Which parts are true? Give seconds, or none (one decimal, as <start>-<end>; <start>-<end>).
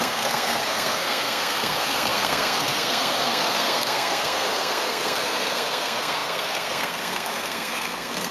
none